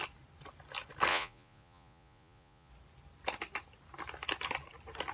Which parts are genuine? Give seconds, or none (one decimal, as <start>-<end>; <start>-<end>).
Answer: 0.0-1.1; 2.7-5.1